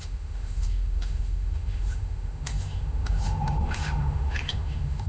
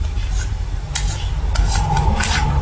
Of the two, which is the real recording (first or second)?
second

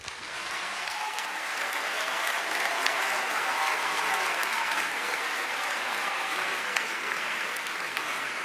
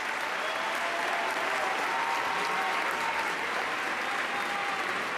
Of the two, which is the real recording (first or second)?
second